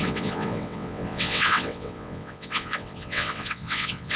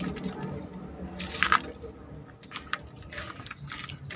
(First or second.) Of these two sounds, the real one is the second